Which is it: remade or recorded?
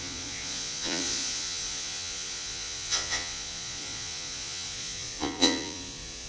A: remade